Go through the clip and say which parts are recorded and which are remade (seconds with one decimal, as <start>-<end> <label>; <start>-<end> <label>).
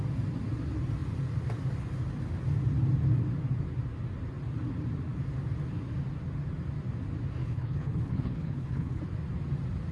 0.0-7.4 recorded; 7.4-9.0 remade; 9.0-9.9 recorded